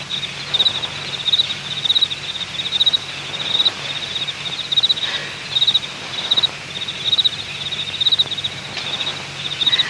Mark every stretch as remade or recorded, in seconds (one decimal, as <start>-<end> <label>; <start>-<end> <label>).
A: 0.0-9.9 recorded